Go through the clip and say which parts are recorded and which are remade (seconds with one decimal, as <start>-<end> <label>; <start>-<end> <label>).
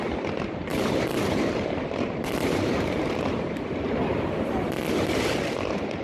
0.0-0.7 recorded; 0.7-4.3 remade; 4.3-6.0 recorded